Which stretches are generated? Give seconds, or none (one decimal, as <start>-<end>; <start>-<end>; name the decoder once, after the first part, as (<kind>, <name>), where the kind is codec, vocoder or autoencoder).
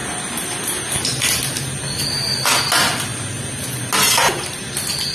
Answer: none